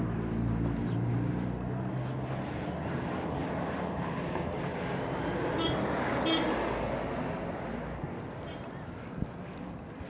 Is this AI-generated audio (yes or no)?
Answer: no